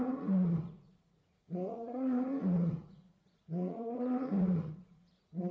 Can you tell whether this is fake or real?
fake